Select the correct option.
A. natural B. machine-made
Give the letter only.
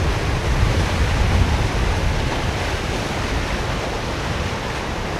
A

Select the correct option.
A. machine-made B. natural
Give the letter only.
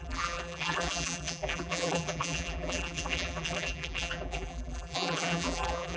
A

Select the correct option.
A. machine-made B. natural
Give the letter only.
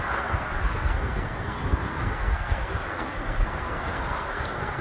A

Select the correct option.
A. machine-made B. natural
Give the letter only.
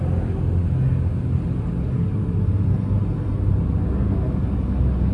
B